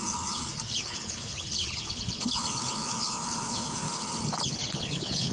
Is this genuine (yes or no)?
no